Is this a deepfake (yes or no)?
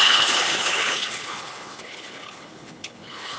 yes